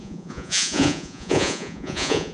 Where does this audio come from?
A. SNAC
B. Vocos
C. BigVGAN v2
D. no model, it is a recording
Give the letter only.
B